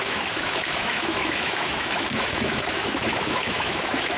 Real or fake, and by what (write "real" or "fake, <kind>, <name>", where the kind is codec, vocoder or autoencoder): fake, autoencoder, DAC-VAE